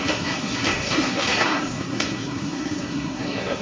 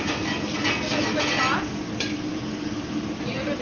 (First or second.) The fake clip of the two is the first